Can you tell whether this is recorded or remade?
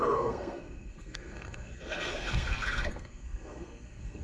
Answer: remade